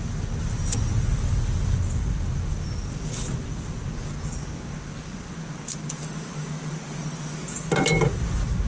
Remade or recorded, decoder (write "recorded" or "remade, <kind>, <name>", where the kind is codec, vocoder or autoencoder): recorded